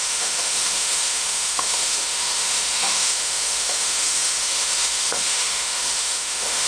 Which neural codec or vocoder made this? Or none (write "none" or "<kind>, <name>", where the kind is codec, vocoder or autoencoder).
autoencoder, DAC-VAE